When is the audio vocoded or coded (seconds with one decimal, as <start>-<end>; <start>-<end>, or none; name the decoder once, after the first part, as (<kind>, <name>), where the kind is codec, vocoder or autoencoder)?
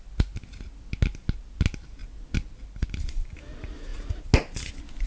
none